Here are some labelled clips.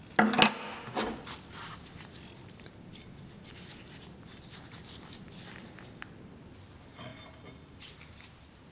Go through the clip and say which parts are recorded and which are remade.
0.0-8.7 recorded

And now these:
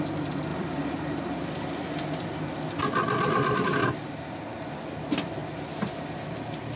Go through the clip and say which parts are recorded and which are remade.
0.0-0.5 recorded; 0.5-2.8 remade; 2.8-3.8 recorded; 3.8-4.6 remade; 4.6-6.8 recorded

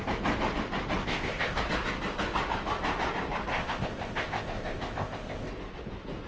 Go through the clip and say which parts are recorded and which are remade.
0.0-1.0 recorded; 1.0-1.6 remade; 1.6-3.5 recorded; 3.5-5.5 remade; 5.5-6.3 recorded

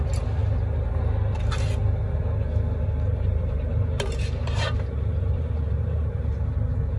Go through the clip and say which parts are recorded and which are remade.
0.0-3.1 recorded; 3.1-6.3 remade; 6.3-7.0 recorded